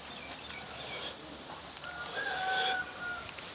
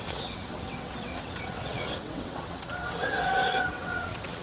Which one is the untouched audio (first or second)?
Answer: first